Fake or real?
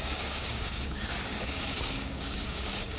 fake